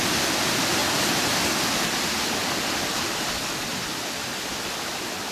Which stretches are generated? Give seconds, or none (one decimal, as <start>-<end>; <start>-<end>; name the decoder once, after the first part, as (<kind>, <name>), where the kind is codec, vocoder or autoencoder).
none